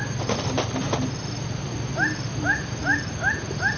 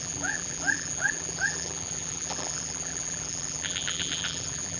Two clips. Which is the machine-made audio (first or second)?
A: second